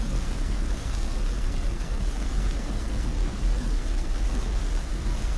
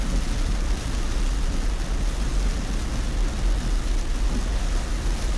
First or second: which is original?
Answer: second